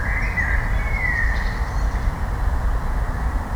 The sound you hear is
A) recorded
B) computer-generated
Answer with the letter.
A